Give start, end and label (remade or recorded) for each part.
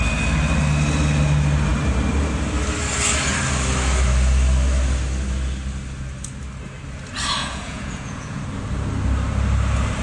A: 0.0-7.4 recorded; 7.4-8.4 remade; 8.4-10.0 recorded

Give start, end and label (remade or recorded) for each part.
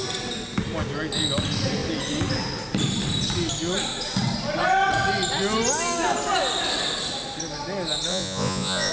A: 0.0-8.1 recorded; 8.1-8.9 remade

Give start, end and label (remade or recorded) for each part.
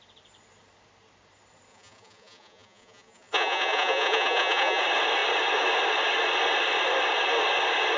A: 0.0-1.7 recorded; 1.7-4.8 remade; 4.8-8.0 recorded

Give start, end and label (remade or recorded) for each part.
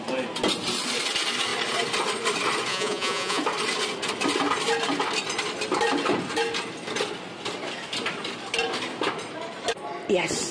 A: 0.0-2.7 recorded; 2.7-3.4 remade; 3.4-10.5 recorded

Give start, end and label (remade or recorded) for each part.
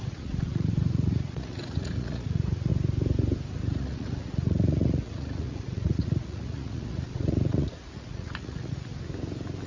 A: 0.0-2.7 remade; 2.7-3.5 recorded; 3.5-8.9 remade; 8.9-9.7 recorded